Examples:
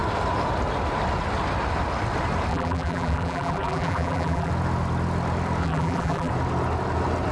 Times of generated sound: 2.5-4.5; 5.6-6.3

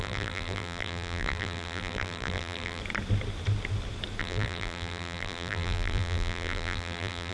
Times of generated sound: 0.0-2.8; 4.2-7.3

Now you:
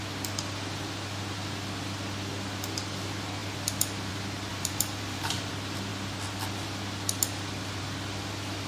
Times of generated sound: 4.5-5.5

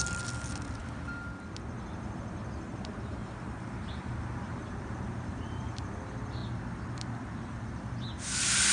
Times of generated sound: 3.2-6.0

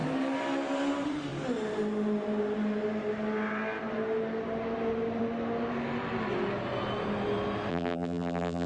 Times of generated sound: 7.7-8.7